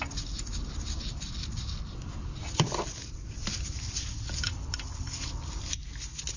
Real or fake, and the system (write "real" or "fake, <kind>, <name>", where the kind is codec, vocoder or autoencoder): real